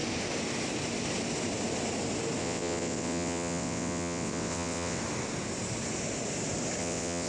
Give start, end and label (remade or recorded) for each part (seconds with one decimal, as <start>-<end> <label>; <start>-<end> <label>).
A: 0.0-2.4 recorded; 2.4-5.0 remade; 5.0-6.8 recorded; 6.8-7.3 remade